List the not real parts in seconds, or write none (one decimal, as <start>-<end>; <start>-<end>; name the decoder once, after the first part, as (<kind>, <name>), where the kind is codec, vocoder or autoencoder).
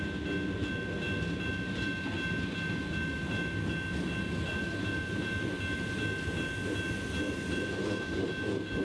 none